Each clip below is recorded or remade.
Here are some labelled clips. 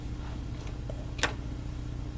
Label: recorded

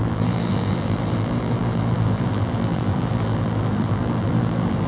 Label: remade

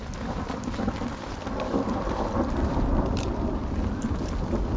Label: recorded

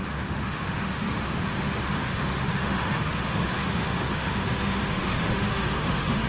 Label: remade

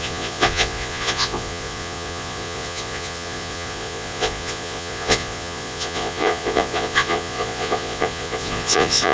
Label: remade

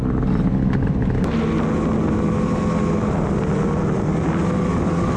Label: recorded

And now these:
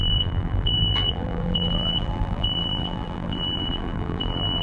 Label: remade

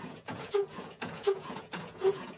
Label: remade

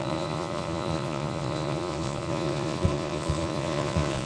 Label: remade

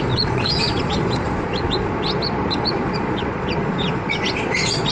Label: remade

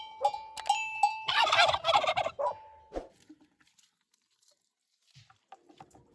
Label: recorded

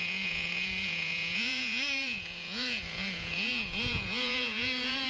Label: remade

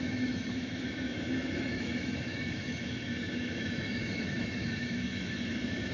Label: remade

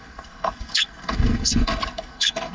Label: remade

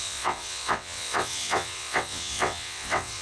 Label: remade